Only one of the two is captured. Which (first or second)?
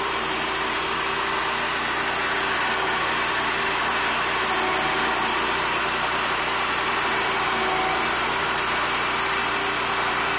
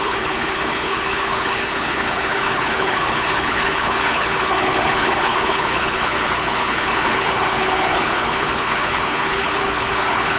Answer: first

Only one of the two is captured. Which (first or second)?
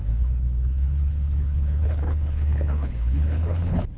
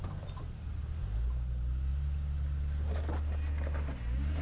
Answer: second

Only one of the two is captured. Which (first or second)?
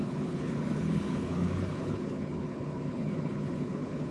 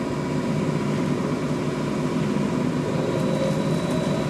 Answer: second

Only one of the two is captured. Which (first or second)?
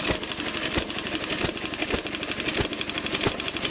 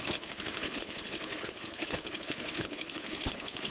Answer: first